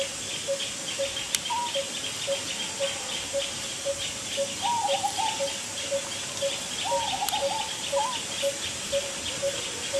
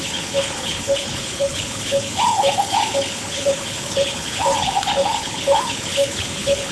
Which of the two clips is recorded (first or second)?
first